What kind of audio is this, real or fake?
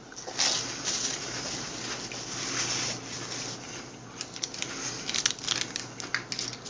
real